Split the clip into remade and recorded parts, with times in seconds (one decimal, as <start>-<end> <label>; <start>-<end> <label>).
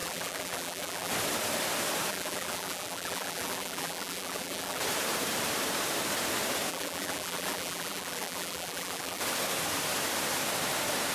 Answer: 0.0-1.1 remade; 1.1-2.1 recorded; 2.1-4.8 remade; 4.8-6.7 recorded; 6.7-9.2 remade; 9.2-11.1 recorded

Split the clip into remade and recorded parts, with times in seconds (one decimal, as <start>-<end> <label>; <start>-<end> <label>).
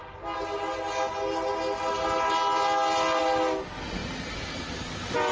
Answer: 0.0-5.3 recorded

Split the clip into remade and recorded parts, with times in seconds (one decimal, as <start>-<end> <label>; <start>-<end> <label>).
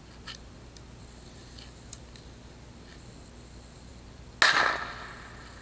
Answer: 0.0-5.6 recorded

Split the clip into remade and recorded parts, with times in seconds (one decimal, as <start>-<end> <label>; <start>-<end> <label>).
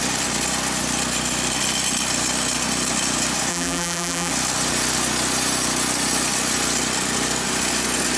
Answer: 0.0-3.5 recorded; 3.5-4.3 remade; 4.3-8.2 recorded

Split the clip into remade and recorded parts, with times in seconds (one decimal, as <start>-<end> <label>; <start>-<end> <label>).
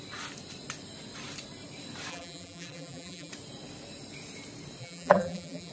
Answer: 0.0-2.1 recorded; 2.1-3.3 remade; 3.3-4.8 recorded; 4.8-5.7 remade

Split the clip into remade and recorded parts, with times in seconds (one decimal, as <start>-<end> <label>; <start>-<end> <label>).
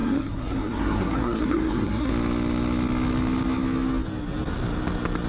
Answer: 0.0-2.1 remade; 2.1-5.3 recorded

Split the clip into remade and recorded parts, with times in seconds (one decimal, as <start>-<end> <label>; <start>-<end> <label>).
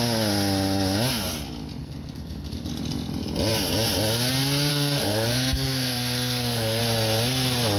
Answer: 0.0-1.8 recorded; 1.8-2.7 remade; 2.7-4.7 recorded; 4.7-6.8 remade; 6.8-7.8 recorded